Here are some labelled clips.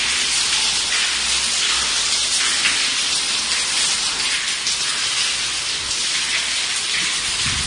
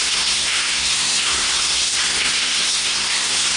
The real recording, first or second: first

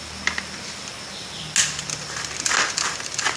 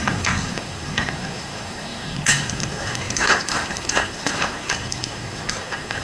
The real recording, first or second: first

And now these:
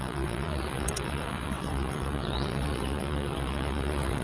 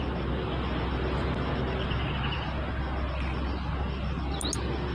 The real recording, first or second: second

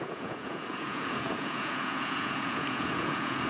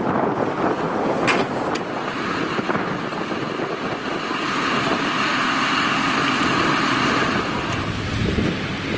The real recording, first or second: second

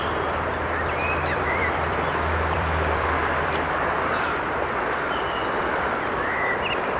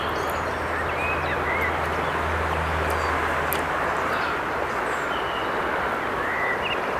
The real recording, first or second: second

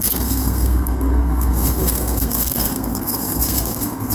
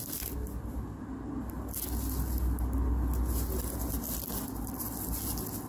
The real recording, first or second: second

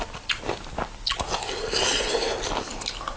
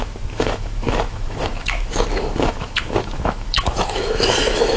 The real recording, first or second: first